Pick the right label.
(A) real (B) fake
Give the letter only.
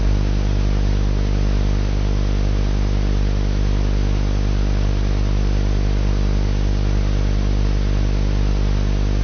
A